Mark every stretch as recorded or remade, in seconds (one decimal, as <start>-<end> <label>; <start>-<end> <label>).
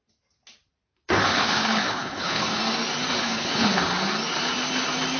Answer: 0.0-1.3 recorded; 1.3-2.6 remade; 2.6-3.2 recorded; 3.2-3.8 remade; 3.8-5.2 recorded